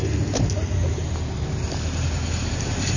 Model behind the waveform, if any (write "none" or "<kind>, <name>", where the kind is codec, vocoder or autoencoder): none